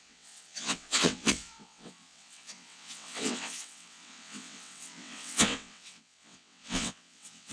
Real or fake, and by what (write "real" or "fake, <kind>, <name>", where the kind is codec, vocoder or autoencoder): fake, vocoder, WaveNeXt